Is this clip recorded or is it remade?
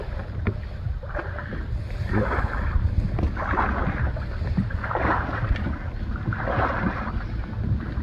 recorded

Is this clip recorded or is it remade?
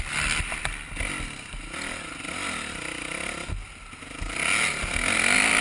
recorded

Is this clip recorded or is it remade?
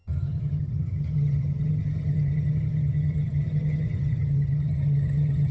remade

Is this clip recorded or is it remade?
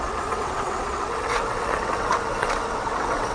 remade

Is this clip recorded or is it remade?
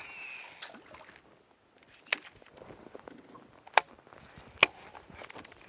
recorded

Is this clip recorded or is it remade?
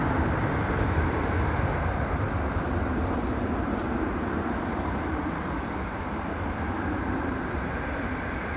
remade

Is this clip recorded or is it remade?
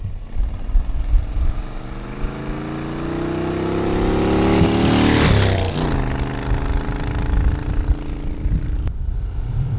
recorded